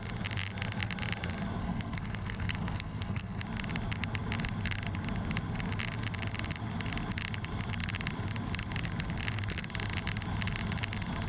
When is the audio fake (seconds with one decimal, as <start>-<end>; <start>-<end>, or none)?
1.6-3.4